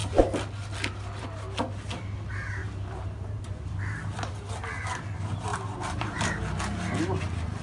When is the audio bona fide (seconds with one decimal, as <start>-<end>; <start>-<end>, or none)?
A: 0.0-2.6; 4.3-5.5; 6.6-7.6